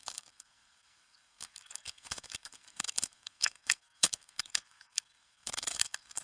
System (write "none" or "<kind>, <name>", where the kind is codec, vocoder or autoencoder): codec, SNAC